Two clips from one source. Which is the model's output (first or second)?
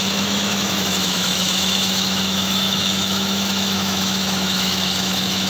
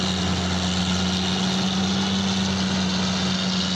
first